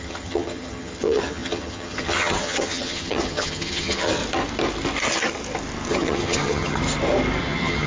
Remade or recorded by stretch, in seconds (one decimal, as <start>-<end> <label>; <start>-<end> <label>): 0.0-4.2 remade; 4.2-5.9 recorded; 5.9-6.8 remade; 6.8-7.4 recorded; 7.4-7.9 remade